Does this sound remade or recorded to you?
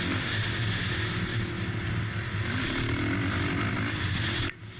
recorded